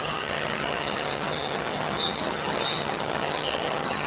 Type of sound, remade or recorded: remade